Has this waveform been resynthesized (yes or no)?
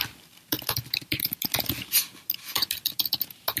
no